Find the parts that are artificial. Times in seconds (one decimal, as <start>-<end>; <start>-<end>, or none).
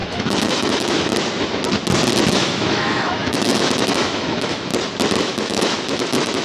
0.0-1.1; 2.3-4.7; 5.2-6.4